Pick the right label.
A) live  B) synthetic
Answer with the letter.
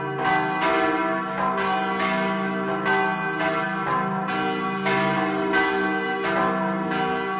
A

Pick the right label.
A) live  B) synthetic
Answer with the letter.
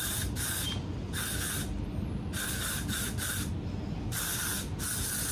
A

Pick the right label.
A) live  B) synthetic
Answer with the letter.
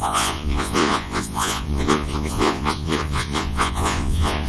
B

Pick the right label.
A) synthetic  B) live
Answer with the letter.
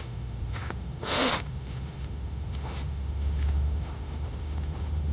A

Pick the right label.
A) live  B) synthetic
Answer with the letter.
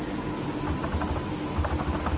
A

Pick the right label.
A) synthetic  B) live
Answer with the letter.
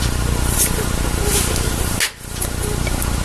B